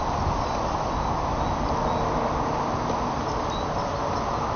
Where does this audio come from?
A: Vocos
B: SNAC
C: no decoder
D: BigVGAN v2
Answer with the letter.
C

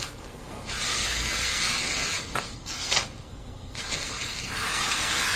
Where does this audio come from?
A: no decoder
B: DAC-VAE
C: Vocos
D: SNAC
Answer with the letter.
D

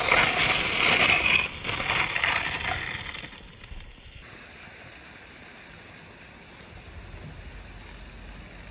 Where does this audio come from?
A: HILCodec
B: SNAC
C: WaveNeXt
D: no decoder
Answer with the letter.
D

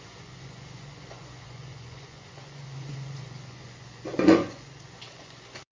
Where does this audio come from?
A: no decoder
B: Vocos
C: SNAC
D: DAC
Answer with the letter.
B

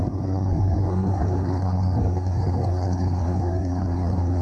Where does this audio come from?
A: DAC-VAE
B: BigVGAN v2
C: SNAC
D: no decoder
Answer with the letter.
C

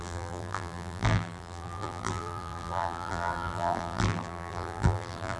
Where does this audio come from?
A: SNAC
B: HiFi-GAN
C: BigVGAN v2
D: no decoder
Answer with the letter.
C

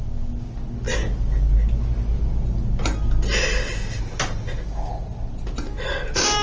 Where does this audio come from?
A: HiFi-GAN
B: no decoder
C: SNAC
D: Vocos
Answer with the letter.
B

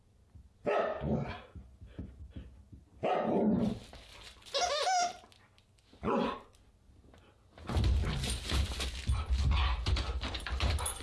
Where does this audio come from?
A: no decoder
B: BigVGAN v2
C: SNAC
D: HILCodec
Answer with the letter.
A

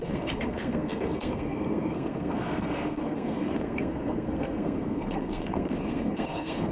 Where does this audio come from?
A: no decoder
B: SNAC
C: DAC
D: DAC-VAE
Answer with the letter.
B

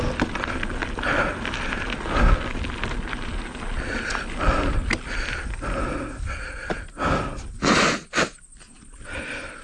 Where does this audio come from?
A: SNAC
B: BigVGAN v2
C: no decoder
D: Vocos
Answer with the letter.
C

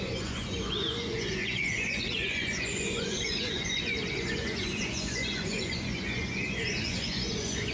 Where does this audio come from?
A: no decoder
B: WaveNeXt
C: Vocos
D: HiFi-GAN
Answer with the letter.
C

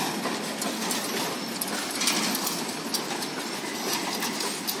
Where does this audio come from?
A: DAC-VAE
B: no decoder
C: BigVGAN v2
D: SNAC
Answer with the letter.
B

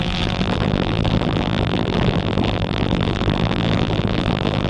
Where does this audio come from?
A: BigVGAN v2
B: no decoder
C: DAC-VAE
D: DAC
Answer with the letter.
A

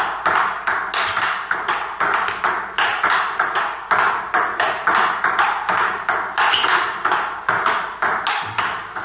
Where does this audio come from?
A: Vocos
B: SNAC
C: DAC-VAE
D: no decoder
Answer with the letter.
D